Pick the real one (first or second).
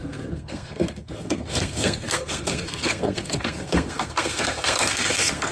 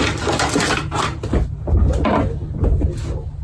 second